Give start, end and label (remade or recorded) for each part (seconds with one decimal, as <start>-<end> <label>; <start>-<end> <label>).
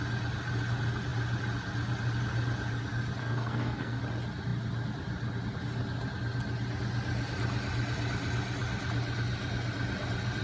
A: 0.0-3.2 recorded; 3.2-4.0 remade; 4.0-10.4 recorded